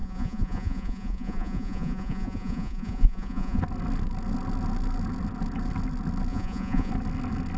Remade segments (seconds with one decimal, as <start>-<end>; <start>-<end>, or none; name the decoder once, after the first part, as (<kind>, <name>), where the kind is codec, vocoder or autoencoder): 0.0-3.6 (vocoder, Vocos); 6.3-6.9